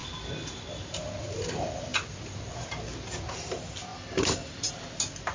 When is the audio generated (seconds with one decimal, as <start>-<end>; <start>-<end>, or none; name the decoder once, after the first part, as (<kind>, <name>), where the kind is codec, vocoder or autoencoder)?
3.9-4.7 (vocoder, BigVGAN v2)